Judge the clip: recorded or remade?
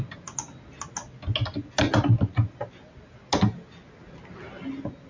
recorded